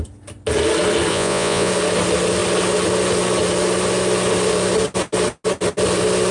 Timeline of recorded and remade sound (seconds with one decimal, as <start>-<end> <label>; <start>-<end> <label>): 0.0-1.1 recorded; 1.1-1.7 remade; 1.7-6.3 recorded